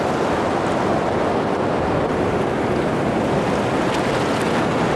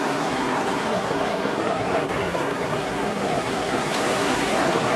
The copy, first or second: second